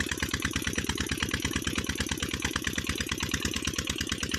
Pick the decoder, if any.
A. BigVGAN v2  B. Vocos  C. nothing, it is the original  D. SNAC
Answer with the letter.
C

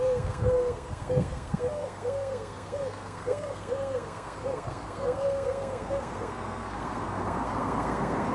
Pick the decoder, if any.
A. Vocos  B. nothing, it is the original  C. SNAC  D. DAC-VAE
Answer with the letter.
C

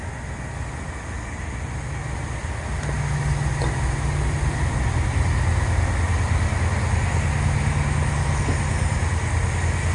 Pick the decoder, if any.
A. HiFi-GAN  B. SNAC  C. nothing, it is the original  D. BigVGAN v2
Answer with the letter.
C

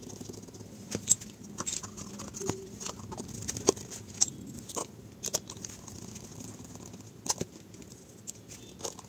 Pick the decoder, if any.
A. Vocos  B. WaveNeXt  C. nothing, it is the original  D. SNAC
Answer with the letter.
C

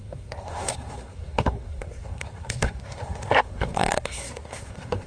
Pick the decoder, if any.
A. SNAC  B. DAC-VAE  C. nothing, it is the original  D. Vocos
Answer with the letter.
A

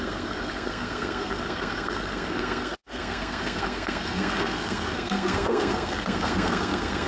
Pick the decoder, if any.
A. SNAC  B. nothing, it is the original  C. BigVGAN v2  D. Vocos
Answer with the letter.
A